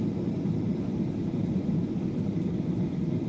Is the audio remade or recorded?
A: recorded